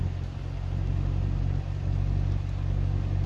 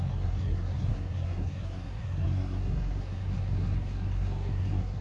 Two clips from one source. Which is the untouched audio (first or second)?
first